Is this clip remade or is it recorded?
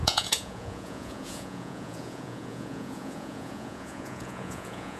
remade